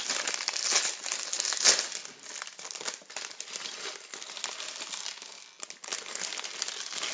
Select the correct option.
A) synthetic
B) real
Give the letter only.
B